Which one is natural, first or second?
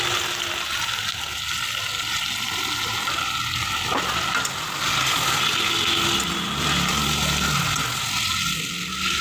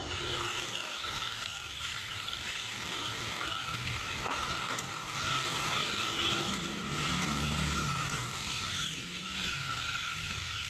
first